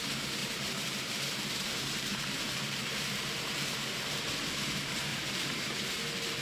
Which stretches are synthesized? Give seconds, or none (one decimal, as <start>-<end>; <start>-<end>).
0.4-4.2; 5.1-6.4